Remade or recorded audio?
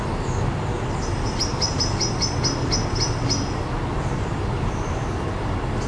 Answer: recorded